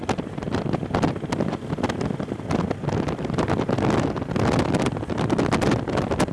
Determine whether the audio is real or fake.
real